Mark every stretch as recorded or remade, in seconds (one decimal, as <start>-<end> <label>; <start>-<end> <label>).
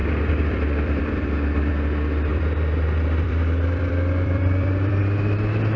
0.0-1.7 remade; 1.7-2.3 recorded; 2.3-5.0 remade; 5.0-5.8 recorded